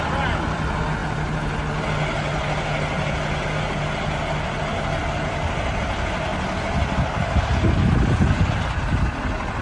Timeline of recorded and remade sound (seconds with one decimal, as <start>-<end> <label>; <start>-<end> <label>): 0.0-9.6 recorded